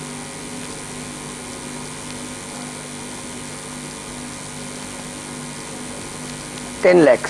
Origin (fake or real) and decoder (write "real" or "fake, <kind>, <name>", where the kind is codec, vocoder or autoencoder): real